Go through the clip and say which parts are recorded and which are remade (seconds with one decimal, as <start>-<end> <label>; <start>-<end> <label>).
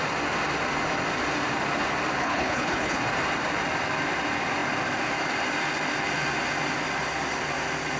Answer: 0.0-2.2 recorded; 2.2-3.0 remade; 3.0-8.0 recorded